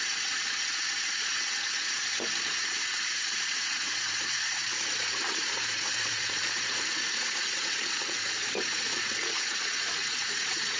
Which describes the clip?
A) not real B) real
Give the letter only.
A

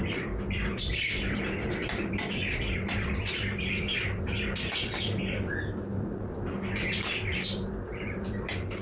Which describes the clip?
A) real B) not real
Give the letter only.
B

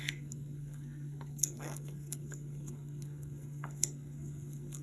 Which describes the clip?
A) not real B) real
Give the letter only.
A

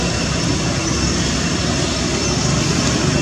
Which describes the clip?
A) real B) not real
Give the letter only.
A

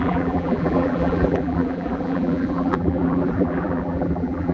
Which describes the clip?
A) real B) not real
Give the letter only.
B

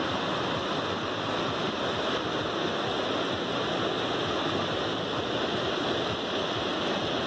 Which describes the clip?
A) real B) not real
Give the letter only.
A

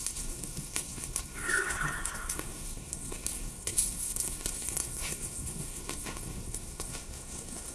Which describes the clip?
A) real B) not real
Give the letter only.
B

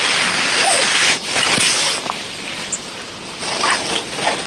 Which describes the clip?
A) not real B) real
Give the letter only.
B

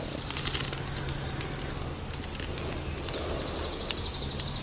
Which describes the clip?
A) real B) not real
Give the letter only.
A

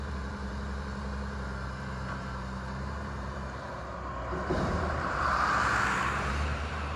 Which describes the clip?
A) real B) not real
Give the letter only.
B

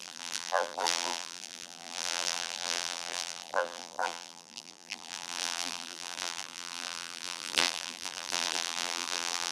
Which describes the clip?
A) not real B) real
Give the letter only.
A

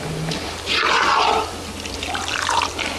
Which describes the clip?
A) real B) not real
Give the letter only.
A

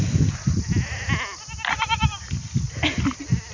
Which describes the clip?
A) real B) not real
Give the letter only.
A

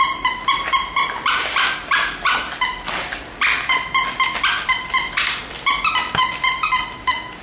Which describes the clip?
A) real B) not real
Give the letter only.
A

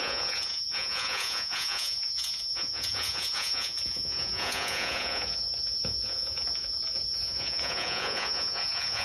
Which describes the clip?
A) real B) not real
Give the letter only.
B